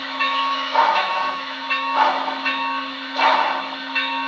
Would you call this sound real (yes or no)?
no